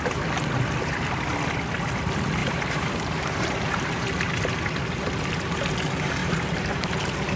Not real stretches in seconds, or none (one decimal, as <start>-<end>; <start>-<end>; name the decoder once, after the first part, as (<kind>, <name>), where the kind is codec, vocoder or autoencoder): 2.4-4.4 (vocoder, BigVGAN v2); 6.2-6.9

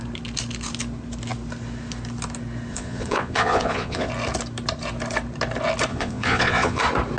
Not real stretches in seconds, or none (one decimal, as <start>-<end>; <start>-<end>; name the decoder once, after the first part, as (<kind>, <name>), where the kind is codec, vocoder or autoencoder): 2.7-4.1 (vocoder, Vocos); 5.9-6.8